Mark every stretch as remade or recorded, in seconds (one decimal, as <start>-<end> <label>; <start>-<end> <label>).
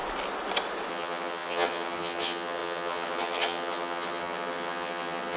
0.0-0.9 recorded; 0.9-5.4 remade